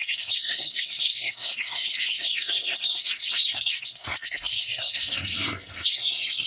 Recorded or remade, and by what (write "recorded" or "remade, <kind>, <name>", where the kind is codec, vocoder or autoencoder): remade, codec, SNAC